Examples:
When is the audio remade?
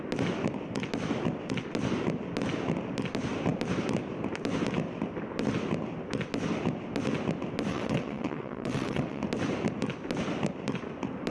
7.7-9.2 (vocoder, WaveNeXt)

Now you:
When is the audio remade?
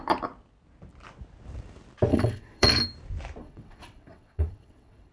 2.1-2.7 (vocoder, WaveNeXt); 3.4-5.1